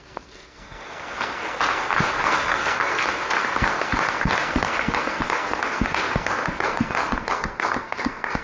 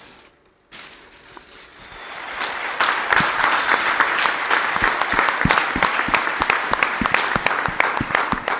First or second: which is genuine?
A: second